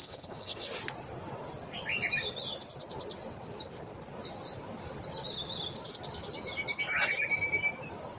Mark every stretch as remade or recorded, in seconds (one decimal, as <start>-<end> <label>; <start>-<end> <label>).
0.0-0.7 remade; 0.7-8.2 recorded